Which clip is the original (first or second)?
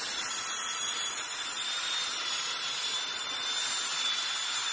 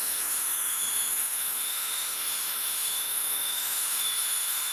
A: first